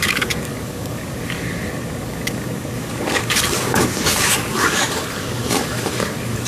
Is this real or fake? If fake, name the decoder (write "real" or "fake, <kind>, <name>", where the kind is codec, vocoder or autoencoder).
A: fake, codec, DAC